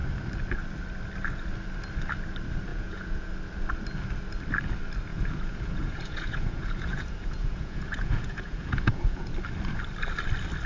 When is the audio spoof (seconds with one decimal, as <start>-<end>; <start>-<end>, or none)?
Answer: 2.7-3.3; 5.1-9.3